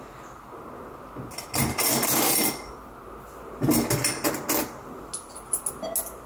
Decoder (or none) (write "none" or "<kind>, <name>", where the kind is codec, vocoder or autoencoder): none